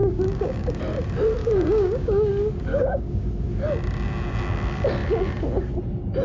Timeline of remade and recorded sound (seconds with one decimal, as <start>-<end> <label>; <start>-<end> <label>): 0.0-0.8 remade; 0.8-1.4 recorded; 1.4-2.3 remade; 2.3-2.7 recorded; 2.7-3.3 remade; 3.3-6.2 recorded